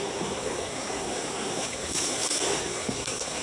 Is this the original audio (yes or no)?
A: no